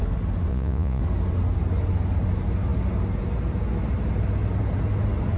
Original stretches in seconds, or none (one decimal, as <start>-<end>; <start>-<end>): 0.0-0.5; 1.0-5.4